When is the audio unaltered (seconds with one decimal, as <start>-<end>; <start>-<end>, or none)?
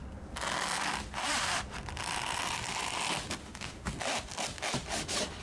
0.0-3.4; 3.9-5.4